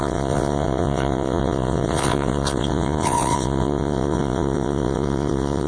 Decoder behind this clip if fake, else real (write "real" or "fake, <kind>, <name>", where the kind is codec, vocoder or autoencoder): fake, vocoder, WaveNeXt